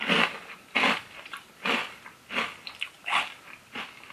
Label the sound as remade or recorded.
recorded